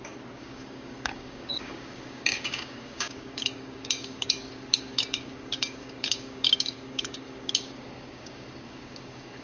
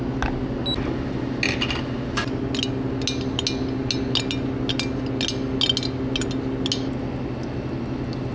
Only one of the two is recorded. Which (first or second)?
second